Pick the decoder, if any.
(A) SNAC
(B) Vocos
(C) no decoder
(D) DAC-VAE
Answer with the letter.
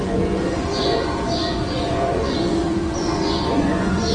B